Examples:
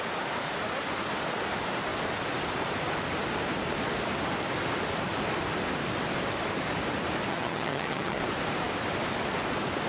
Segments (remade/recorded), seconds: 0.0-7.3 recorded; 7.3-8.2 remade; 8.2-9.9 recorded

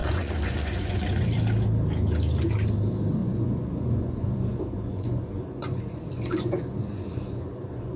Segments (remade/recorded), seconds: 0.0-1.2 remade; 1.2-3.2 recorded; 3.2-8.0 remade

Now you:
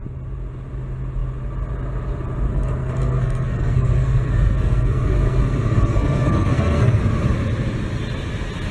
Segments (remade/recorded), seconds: 0.0-2.5 recorded; 2.5-7.0 remade; 7.0-8.7 recorded

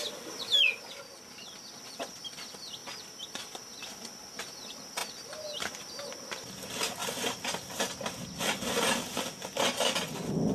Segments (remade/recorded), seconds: 0.0-2.8 recorded; 2.8-3.6 remade; 3.6-7.0 recorded; 7.0-7.8 remade; 7.8-10.5 recorded

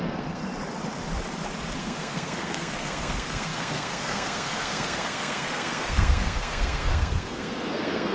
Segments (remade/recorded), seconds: 0.0-0.4 remade; 0.4-1.8 recorded; 1.8-8.1 remade

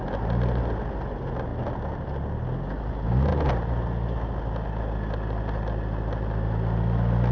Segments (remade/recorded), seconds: 0.0-7.3 recorded

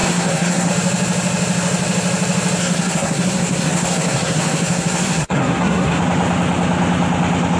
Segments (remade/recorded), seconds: 0.0-0.7 remade; 0.7-2.6 recorded; 2.6-6.0 remade; 6.0-7.6 recorded